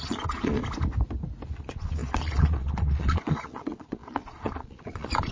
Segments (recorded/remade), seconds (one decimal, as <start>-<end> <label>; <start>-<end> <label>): 0.0-0.6 remade; 0.6-1.6 recorded; 1.6-5.3 remade